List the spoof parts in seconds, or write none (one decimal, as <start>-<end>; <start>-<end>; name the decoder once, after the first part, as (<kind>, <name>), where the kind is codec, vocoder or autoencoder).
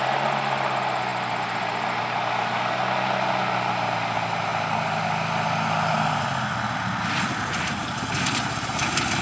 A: none